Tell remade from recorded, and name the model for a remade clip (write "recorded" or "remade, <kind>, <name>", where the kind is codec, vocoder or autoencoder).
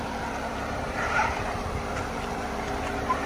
remade, vocoder, BigVGAN v2